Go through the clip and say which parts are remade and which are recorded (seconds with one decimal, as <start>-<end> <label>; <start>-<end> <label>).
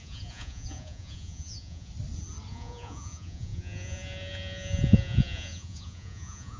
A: 0.0-1.9 remade; 1.9-2.5 recorded; 2.5-6.6 remade